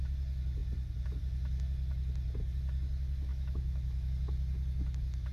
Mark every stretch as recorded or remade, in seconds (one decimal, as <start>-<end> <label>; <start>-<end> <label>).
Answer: 0.0-3.3 recorded; 3.3-4.1 remade; 4.1-5.3 recorded